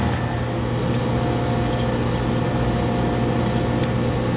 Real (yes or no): yes